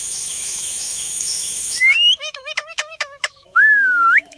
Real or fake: fake